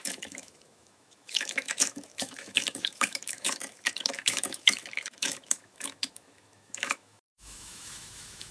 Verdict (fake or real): fake